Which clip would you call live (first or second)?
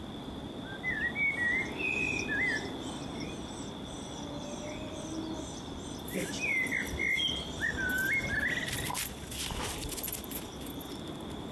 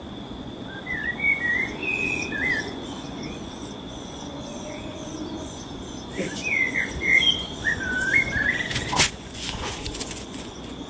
first